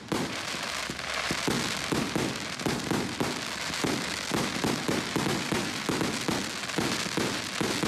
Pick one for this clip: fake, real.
real